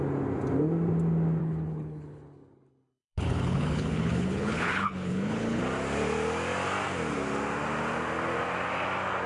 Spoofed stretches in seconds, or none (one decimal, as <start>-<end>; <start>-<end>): 1.4-5.6